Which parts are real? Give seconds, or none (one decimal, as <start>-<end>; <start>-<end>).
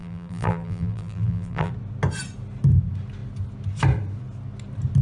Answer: 1.7-5.0